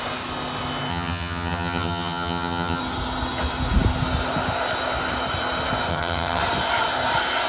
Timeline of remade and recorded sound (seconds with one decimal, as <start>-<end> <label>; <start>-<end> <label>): 0.0-0.9 recorded; 0.9-2.8 remade; 2.8-5.9 recorded; 5.9-6.4 remade; 6.4-7.5 recorded